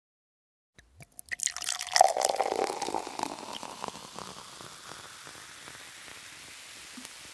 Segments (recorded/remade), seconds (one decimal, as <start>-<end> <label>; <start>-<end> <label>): 0.0-7.3 recorded